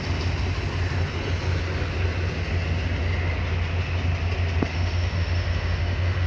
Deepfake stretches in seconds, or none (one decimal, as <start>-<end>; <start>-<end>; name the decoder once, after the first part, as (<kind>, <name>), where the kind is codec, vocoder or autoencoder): 4.7-6.3 (autoencoder, DAC-VAE)